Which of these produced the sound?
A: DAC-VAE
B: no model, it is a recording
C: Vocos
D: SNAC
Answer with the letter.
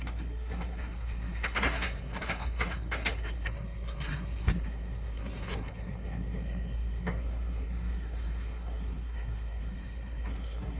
D